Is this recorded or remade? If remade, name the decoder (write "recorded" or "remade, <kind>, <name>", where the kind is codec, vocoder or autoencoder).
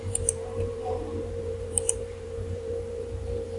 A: remade, vocoder, BigVGAN v2